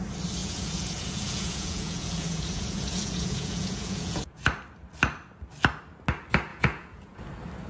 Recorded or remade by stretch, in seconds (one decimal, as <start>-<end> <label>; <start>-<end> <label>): 0.0-0.4 recorded; 0.4-4.4 remade; 4.4-6.5 recorded; 6.5-7.2 remade; 7.2-7.7 recorded